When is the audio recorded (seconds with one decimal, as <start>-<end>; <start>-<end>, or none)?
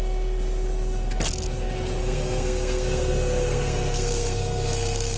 0.0-2.0